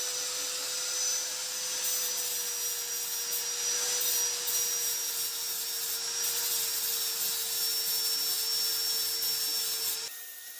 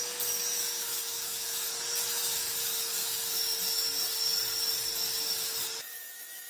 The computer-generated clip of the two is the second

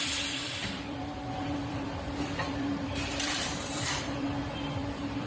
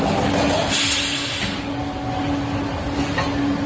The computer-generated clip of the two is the first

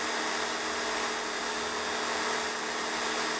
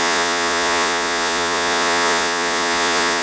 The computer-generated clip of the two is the second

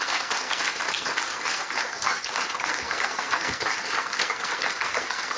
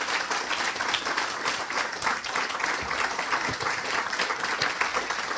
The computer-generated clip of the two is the first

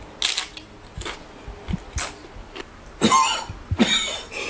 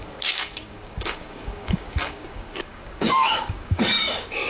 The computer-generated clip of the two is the second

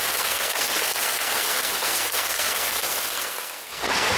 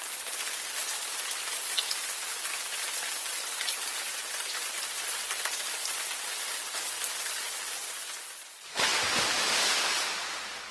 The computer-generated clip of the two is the first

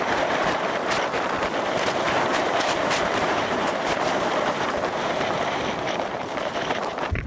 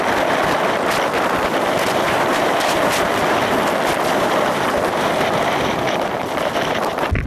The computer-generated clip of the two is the first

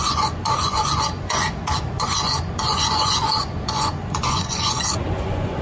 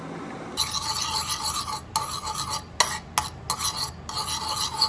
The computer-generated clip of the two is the first